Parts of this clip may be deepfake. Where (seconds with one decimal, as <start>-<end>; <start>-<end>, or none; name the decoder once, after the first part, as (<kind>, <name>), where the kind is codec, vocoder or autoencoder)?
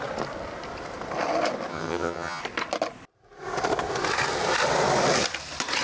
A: 1.7-2.4 (vocoder, HiFi-GAN)